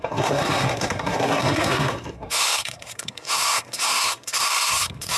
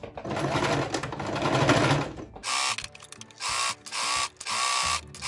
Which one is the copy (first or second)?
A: first